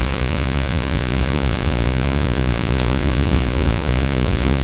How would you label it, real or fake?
fake